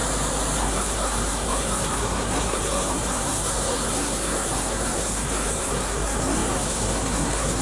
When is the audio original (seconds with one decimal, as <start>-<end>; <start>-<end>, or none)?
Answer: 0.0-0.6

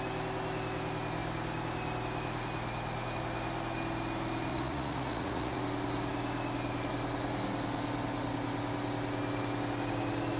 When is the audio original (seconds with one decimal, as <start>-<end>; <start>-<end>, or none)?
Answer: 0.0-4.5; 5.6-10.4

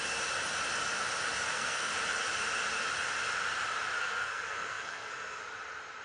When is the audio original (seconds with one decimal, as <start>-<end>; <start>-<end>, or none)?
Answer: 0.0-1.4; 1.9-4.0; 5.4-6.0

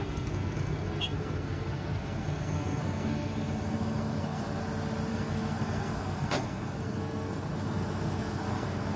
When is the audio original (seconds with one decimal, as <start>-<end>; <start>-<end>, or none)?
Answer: 4.6-5.1

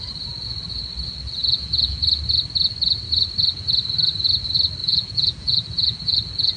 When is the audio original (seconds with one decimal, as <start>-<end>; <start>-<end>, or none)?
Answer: 0.0-1.4; 2.0-4.8

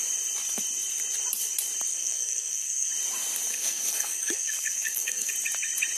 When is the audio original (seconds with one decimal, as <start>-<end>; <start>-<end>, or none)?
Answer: 0.0-1.9; 2.9-3.5; 5.3-6.0

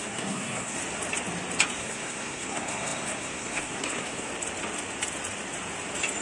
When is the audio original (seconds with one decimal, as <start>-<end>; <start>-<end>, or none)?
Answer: 0.8-1.8; 4.3-6.2